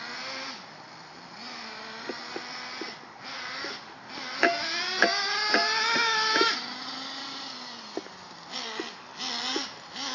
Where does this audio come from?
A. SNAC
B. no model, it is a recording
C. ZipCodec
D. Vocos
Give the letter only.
B